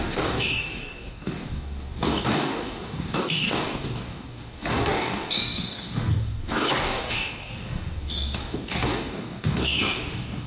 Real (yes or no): no